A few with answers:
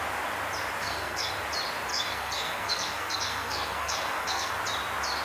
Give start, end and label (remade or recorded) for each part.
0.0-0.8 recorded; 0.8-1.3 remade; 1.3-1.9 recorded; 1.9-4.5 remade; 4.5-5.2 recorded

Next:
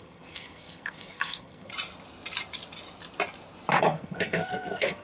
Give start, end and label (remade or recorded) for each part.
0.0-1.7 remade; 1.7-3.8 recorded; 3.8-5.0 remade

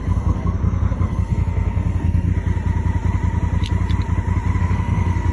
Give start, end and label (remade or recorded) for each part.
0.0-2.3 remade; 2.3-4.6 recorded; 4.6-5.3 remade

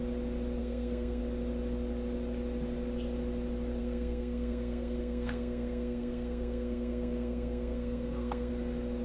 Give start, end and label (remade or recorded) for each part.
0.0-0.6 recorded; 0.6-1.2 remade; 1.2-3.8 recorded; 3.8-8.5 remade; 8.5-9.0 recorded